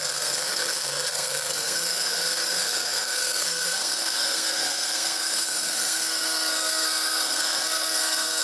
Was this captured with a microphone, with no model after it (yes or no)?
no